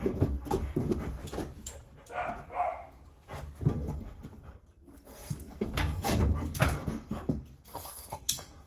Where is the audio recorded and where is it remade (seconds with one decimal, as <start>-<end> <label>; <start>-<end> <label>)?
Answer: 0.0-1.2 remade; 1.2-3.7 recorded; 3.7-8.7 remade